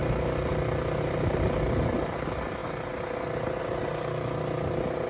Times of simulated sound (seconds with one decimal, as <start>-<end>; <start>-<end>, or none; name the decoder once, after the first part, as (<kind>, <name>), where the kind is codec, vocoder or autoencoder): none

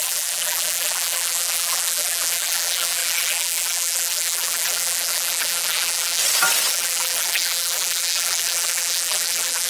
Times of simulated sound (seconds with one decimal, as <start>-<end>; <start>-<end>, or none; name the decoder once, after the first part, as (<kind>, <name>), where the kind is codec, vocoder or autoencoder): 0.0-6.2 (vocoder, BigVGAN v2); 6.7-9.7

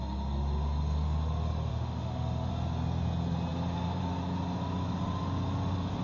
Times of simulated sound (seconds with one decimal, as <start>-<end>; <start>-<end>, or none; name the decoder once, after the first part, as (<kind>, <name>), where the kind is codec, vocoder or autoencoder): 1.7-2.5 (autoencoder, DAC-VAE)